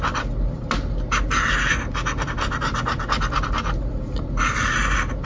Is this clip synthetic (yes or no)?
no